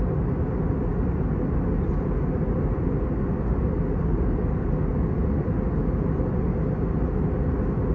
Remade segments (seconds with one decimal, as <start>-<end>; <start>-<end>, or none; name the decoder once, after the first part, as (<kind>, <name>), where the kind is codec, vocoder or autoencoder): none